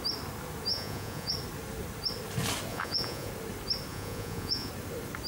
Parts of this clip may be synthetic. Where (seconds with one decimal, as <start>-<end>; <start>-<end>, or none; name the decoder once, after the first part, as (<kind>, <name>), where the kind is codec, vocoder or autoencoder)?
0.7-1.3 (vocoder, Vocos); 2.7-3.3; 3.9-4.7